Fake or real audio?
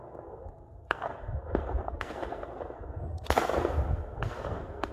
fake